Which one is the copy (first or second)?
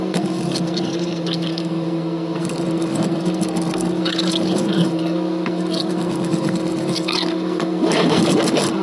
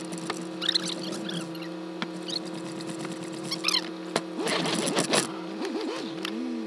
first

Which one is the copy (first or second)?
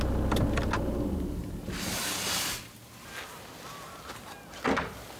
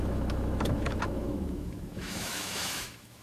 second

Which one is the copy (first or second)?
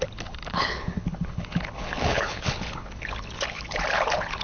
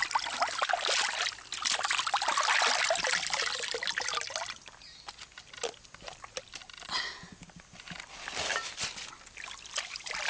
first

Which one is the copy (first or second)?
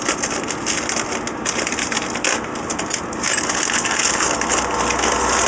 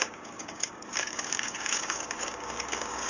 second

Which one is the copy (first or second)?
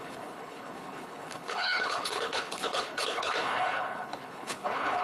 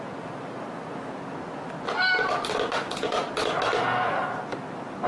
first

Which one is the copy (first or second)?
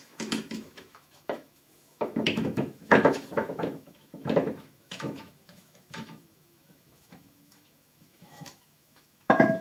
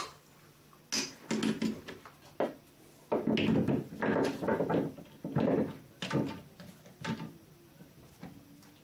first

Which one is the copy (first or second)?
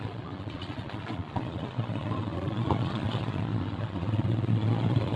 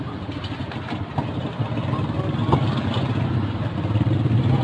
first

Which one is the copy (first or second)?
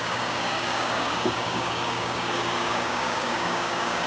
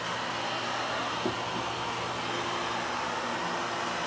first